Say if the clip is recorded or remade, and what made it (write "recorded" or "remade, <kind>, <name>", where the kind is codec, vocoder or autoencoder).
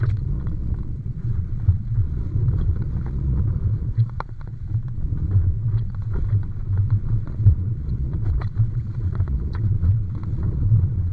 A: remade, vocoder, Vocos